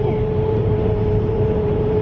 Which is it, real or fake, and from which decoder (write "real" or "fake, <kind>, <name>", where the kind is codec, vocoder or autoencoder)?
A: fake, vocoder, BigVGAN v2